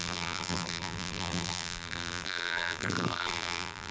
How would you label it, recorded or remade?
remade